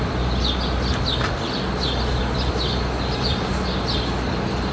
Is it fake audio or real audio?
real